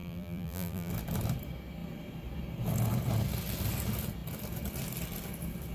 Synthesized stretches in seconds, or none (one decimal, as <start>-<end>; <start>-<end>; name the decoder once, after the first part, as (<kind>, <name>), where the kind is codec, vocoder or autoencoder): 0.0-0.9 (vocoder, BigVGAN v2)